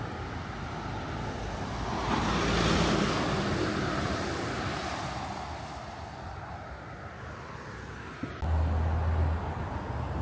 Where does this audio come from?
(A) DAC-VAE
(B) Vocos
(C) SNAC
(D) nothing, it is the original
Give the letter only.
D